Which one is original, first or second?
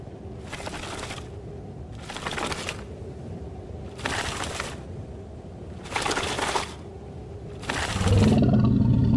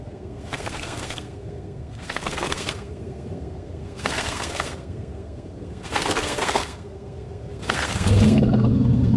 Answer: first